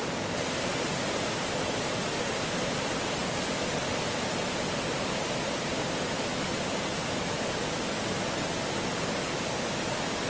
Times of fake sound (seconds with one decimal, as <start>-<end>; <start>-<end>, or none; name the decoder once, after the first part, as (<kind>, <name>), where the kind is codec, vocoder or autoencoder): none